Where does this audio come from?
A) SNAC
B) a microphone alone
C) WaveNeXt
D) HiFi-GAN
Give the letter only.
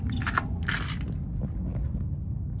B